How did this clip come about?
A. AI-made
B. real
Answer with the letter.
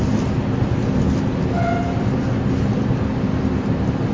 B